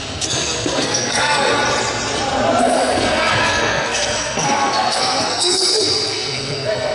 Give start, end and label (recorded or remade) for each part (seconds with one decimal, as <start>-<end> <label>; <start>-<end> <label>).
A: 0.0-1.5 remade; 1.5-2.6 recorded; 2.6-6.9 remade